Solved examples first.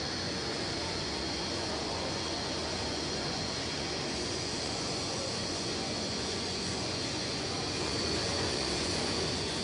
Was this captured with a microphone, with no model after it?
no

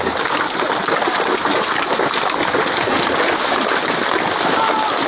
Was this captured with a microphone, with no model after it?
yes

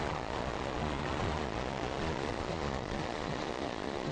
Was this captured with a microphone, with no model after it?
no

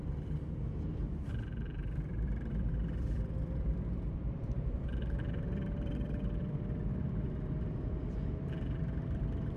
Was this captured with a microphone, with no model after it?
no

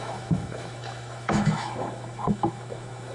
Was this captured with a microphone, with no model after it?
no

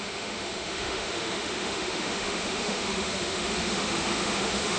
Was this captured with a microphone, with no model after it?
no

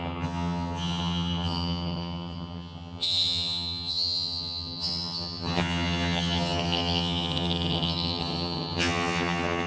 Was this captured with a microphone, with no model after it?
no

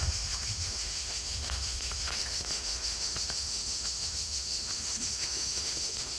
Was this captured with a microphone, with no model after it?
no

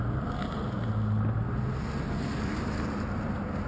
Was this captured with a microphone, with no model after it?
yes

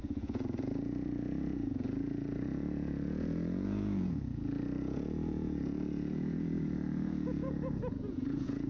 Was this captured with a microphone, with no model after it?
no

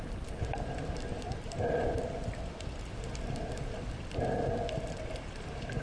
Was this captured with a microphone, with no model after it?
yes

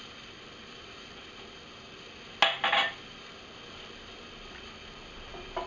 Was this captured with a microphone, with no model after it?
yes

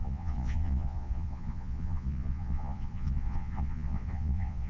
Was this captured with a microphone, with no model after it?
no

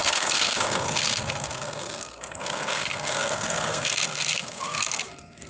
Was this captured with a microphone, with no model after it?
no